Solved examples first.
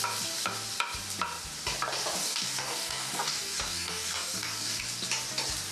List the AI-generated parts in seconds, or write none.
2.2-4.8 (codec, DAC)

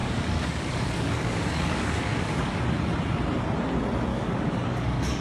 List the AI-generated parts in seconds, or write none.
0.0-2.6 (codec, DAC); 4.1-5.2

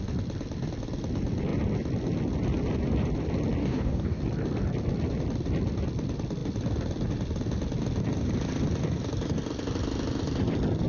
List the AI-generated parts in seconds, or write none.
3.6-4.2 (codec, DAC)

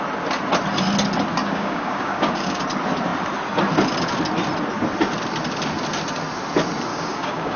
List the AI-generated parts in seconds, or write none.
1.4-2.6 (codec, DAC); 6.9-7.6

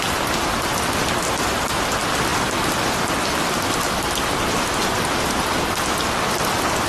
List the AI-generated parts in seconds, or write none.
none

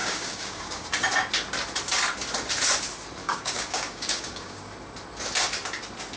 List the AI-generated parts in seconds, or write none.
0.0-0.9 (codec, DAC); 3.2-4.7

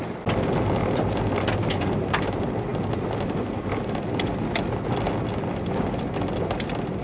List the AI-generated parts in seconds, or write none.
none

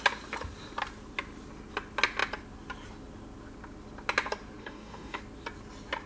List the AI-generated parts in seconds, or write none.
4.6-5.2 (codec, DAC)